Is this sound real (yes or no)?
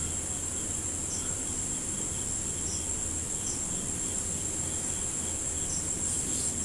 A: yes